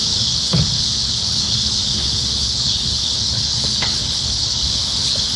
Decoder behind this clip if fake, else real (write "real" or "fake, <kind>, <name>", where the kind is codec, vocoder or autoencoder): fake, codec, HILCodec